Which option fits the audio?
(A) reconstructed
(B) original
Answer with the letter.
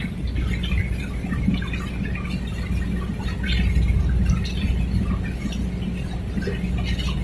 B